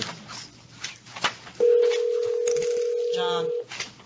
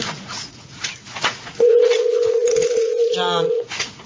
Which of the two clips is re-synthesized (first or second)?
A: second